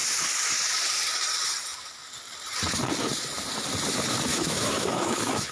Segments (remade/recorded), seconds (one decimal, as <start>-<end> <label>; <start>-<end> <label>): 0.0-4.3 recorded; 4.3-5.5 remade